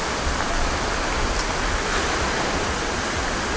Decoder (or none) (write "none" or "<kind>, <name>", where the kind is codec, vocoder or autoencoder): none